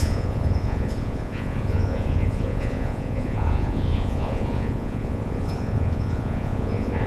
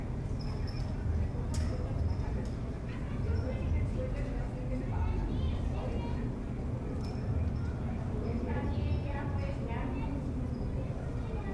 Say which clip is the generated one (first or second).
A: first